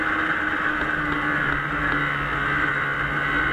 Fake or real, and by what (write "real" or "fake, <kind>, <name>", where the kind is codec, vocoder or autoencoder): real